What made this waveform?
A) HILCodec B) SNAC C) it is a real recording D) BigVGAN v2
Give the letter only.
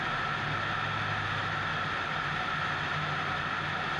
C